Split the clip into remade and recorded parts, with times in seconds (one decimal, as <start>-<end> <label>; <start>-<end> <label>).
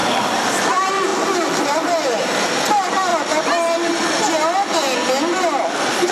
0.0-0.5 recorded; 0.5-3.1 remade; 3.1-6.1 recorded